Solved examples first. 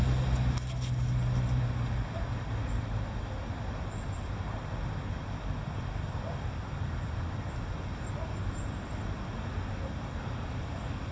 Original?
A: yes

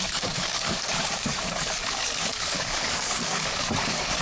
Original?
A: no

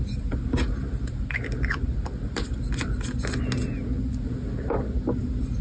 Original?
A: yes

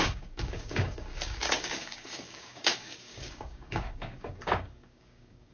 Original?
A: no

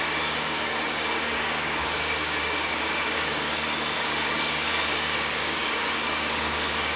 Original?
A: no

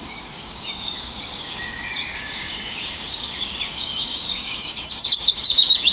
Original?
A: no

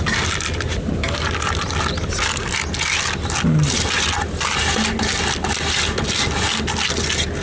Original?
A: yes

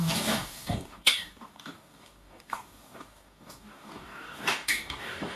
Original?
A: no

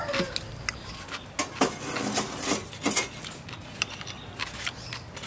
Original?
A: yes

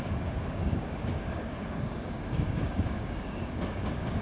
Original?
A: no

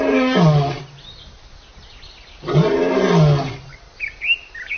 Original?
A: yes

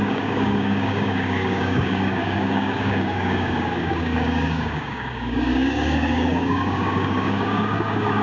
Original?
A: no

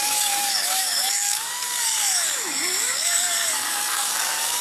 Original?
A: no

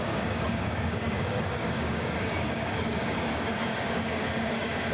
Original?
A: no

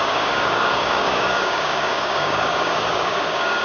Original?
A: no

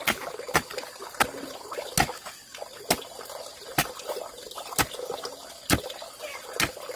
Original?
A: yes